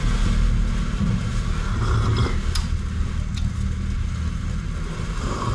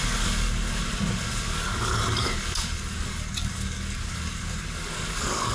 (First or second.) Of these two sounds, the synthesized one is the second